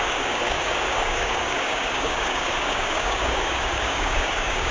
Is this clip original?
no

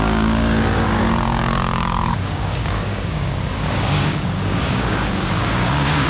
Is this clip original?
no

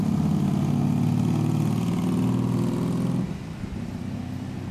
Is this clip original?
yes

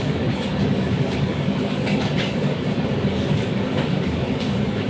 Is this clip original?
no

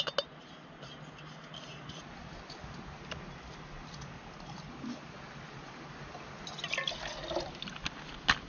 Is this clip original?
yes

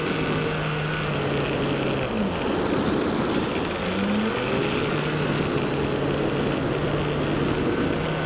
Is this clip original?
yes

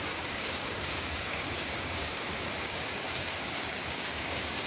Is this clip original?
no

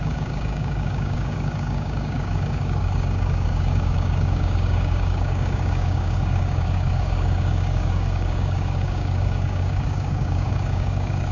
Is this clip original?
no